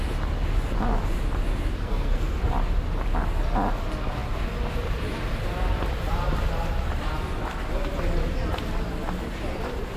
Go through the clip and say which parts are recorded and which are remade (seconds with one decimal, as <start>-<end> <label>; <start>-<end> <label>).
0.0-1.8 recorded; 1.8-2.5 remade; 2.5-10.0 recorded